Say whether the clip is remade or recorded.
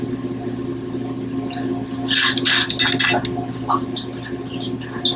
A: recorded